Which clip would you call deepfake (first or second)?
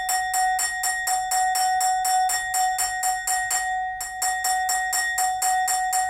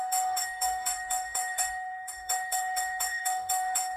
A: second